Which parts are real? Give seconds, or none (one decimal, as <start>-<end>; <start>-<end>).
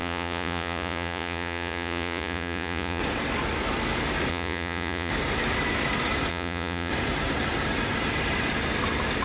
3.0-4.3; 5.1-6.3; 6.9-9.2